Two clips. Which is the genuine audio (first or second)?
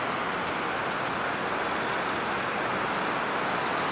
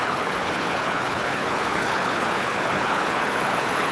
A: first